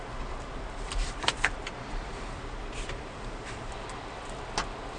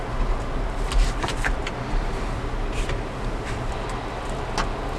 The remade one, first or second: first